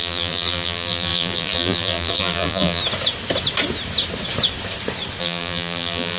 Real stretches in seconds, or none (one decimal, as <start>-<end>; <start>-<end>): 2.8-5.2